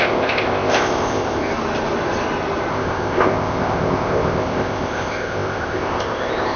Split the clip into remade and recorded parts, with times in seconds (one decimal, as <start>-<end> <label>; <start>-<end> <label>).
0.0-1.5 remade; 1.5-2.7 recorded; 2.7-6.6 remade